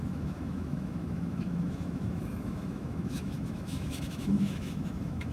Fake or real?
fake